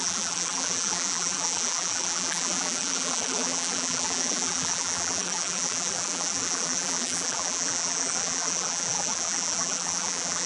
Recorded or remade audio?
remade